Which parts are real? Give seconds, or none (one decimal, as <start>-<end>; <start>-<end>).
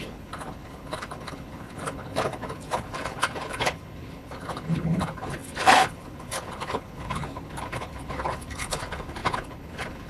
none